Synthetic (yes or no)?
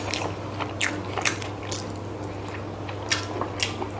no